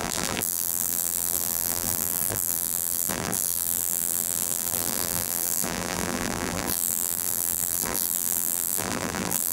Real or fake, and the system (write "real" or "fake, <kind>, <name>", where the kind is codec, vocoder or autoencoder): fake, vocoder, BigVGAN v2